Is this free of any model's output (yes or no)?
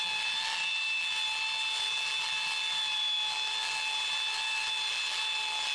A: yes